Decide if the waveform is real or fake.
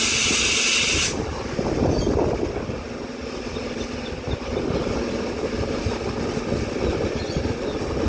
real